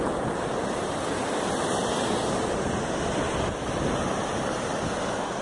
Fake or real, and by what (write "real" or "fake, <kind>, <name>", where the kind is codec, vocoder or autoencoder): real